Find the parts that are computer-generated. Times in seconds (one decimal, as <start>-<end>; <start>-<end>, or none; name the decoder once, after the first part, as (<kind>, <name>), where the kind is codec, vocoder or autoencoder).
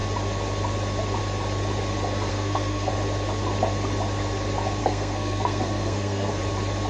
2.3-2.9 (codec, SNAC); 4.8-6.4